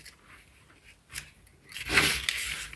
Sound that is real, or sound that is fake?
real